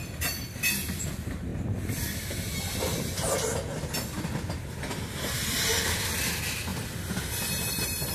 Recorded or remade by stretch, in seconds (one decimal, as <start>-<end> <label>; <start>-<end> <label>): 0.0-8.1 recorded